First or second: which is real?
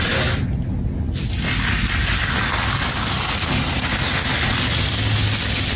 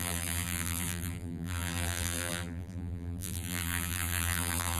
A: first